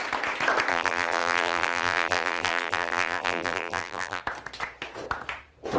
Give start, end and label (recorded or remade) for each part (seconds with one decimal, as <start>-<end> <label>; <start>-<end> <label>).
0.0-0.7 recorded; 0.7-4.2 remade; 4.2-5.8 recorded